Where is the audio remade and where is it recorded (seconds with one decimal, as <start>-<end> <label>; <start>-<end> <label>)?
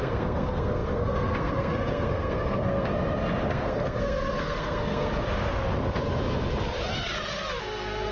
0.0-2.9 remade; 2.9-3.5 recorded; 3.5-5.1 remade; 5.1-7.6 recorded; 7.6-8.1 remade